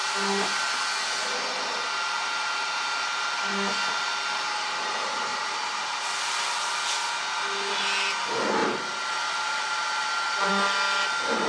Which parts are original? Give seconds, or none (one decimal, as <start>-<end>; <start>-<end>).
0.0-8.6; 10.5-11.5